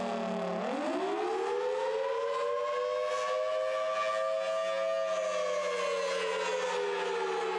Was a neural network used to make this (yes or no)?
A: no